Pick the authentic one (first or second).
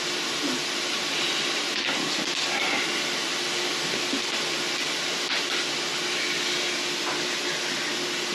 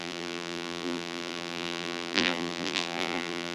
first